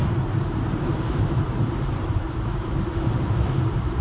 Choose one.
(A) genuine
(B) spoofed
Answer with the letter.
B